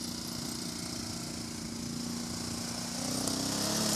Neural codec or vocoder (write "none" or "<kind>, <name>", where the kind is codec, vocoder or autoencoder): none